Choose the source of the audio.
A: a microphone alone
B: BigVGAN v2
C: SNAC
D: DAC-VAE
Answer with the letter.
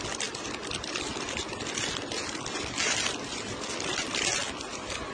A